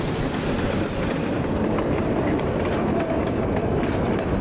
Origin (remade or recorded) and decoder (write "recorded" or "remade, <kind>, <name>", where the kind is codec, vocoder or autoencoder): recorded